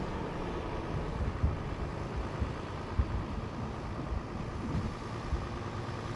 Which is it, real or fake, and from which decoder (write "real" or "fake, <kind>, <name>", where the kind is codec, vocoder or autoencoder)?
real